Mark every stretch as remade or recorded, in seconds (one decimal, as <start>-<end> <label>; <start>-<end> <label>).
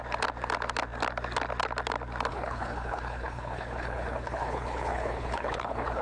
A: 0.0-2.3 recorded; 2.3-6.0 remade